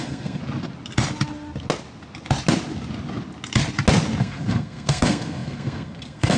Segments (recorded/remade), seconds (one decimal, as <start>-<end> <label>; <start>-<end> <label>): 0.0-0.4 remade; 0.4-4.2 recorded; 4.2-6.4 remade